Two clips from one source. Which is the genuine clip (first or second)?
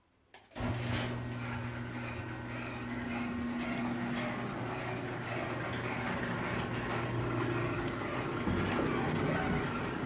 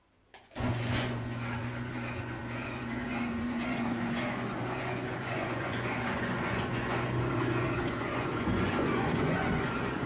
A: first